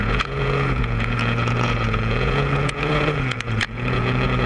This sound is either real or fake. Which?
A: fake